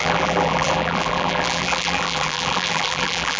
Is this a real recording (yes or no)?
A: no